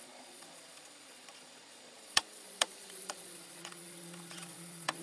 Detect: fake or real fake